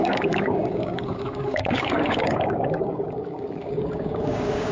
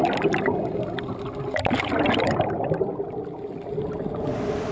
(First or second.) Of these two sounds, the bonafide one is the second